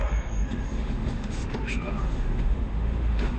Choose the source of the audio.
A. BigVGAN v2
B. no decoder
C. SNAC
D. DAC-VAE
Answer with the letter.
D